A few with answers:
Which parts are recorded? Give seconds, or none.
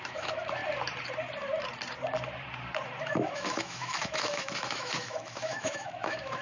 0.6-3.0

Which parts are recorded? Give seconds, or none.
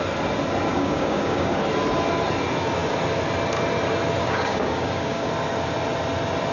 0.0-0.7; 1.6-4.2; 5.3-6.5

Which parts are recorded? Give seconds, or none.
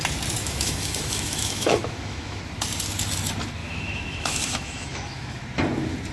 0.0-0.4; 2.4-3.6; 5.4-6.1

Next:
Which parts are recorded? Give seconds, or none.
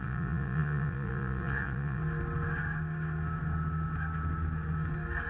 2.0-5.3